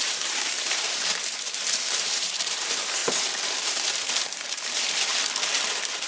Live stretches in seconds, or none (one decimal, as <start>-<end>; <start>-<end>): 3.0-3.5; 5.1-6.1